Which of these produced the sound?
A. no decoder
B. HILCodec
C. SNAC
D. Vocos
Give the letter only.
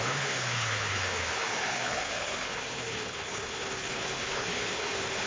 B